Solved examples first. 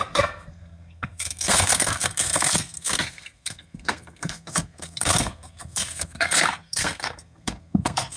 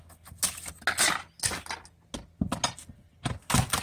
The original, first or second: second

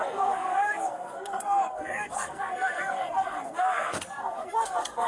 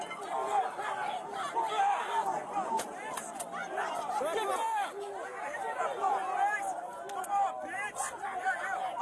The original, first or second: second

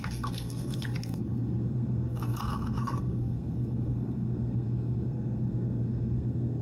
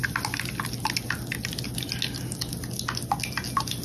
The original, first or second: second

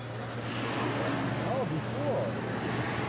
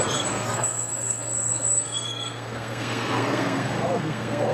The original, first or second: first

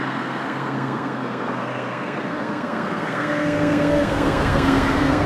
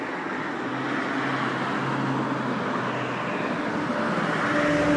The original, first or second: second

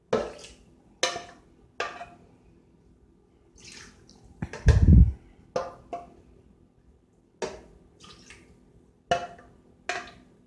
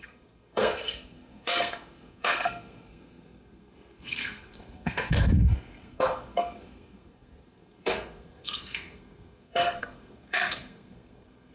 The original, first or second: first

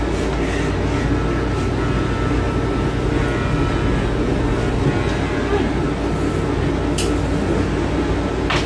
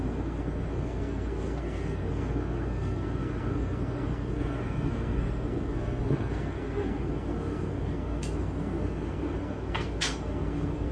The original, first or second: first